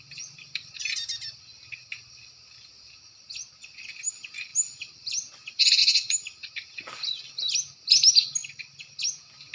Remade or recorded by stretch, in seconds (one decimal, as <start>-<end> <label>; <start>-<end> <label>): 0.0-4.5 recorded; 4.5-5.8 remade; 5.8-8.4 recorded; 8.4-9.0 remade; 9.0-9.5 recorded

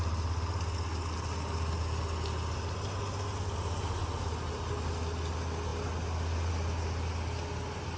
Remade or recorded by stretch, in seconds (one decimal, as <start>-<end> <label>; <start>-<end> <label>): 0.0-8.0 recorded